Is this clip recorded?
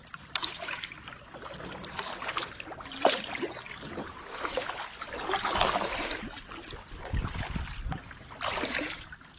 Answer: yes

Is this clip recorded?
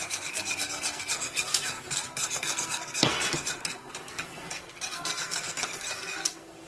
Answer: no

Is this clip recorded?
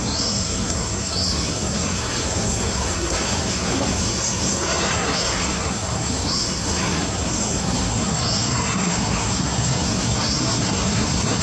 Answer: no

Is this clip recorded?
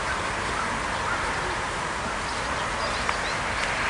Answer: yes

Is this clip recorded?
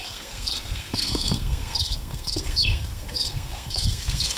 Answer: no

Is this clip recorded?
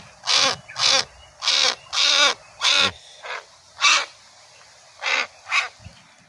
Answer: yes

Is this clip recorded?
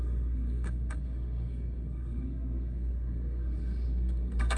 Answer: no